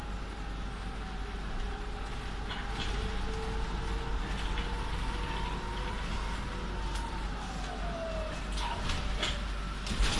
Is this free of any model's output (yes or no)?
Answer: yes